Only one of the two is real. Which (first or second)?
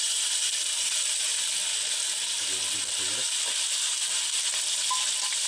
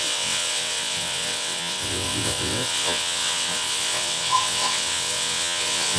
first